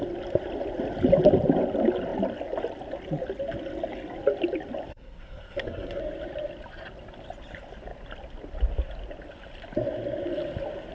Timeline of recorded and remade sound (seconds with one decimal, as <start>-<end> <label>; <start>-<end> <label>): 0.0-4.9 recorded; 4.9-6.0 remade; 6.0-10.9 recorded